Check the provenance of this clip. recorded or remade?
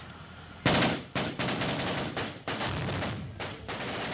recorded